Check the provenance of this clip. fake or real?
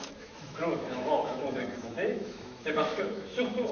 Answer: fake